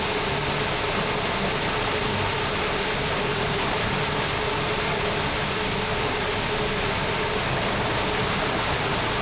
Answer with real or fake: real